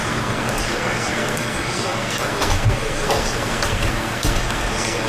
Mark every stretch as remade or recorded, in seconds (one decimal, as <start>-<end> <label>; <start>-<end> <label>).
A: 0.0-5.1 remade